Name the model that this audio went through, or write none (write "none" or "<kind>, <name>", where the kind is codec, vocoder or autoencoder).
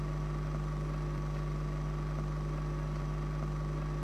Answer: none